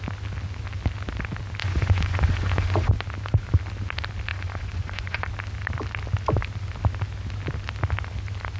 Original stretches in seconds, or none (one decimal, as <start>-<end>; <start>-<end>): 0.0-1.6; 2.9-4.3; 5.3-8.6

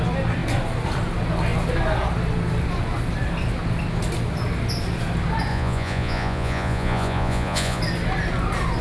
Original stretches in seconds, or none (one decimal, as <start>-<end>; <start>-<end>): 0.0-5.5; 7.8-8.8

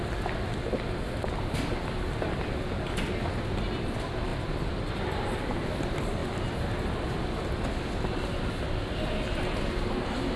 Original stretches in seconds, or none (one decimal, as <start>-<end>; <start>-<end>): 0.0-10.4

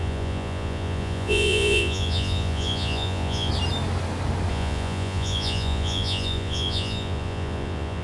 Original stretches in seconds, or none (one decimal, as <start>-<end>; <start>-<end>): 3.5-4.5

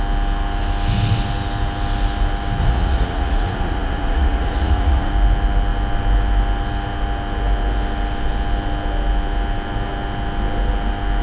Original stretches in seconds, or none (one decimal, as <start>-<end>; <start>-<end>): 0.0-2.6; 5.1-11.2